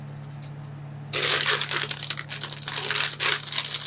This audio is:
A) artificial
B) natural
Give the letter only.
B